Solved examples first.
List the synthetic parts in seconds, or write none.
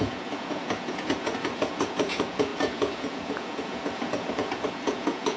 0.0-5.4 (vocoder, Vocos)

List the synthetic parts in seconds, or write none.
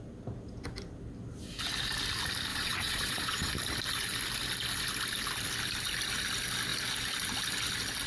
2.5-3.5 (vocoder, Vocos)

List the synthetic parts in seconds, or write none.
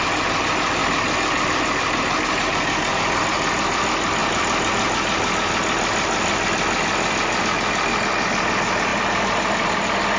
none